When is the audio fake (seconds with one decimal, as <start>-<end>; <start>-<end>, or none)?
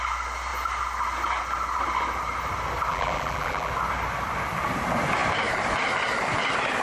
2.9-3.7